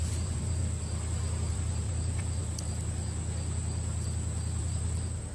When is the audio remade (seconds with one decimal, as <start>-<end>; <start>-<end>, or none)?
0.0-0.6; 1.5-2.4; 4.6-5.3

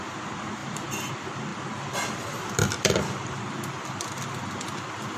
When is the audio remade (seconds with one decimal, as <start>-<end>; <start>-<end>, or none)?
0.6-1.1; 1.5-3.6